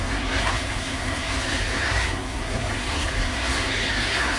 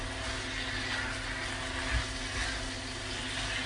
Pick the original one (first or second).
second